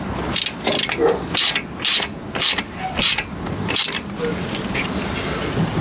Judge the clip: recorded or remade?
recorded